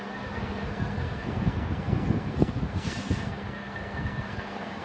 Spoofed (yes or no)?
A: yes